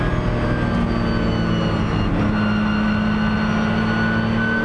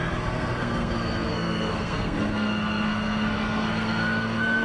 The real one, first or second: first